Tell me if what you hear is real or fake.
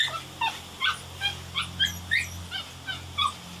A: real